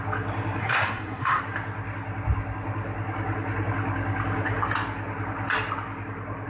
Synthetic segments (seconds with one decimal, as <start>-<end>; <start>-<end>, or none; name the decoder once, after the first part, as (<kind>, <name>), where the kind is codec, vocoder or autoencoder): 0.6-1.4 (codec, SNAC)

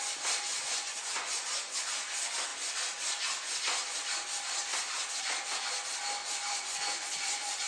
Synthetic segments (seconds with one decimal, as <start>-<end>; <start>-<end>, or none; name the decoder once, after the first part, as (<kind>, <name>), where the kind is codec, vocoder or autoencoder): 0.5-1.9 (vocoder, Vocos); 6.2-7.7

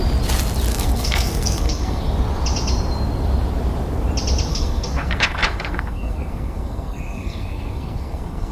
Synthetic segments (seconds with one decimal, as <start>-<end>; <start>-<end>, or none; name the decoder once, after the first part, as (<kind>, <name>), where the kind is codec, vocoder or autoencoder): 0.7-2.0 (codec, SNAC); 4.5-8.5

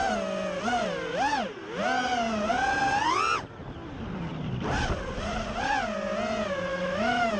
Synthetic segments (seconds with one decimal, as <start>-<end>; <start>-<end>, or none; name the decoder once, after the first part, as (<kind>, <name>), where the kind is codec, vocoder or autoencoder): 6.7-7.4 (autoencoder, DAC-VAE)

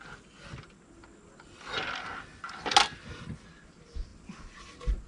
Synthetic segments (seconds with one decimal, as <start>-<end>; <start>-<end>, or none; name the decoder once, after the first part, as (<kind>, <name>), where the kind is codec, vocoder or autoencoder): none

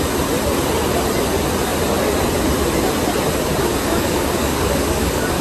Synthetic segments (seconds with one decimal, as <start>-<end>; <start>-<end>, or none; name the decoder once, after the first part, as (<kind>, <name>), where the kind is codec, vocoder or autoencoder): 3.9-5.4 (codec, DAC)

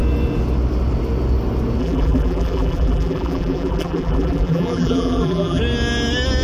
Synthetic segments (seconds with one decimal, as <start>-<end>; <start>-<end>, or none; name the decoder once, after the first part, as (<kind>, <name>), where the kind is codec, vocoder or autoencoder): 1.8-5.6 (vocoder, BigVGAN v2)